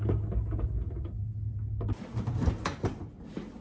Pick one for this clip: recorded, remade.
recorded